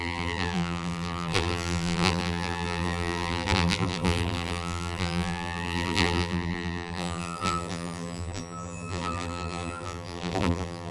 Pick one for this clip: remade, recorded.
remade